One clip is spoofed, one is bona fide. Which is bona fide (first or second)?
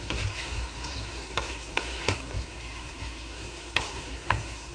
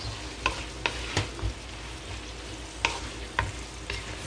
second